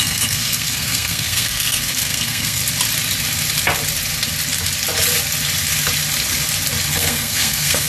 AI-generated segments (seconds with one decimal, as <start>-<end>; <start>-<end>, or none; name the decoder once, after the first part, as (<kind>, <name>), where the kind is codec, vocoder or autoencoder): 0.0-2.6 (codec, SNAC); 6.9-7.9